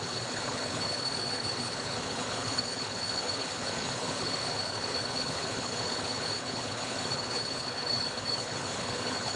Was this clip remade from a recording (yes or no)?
yes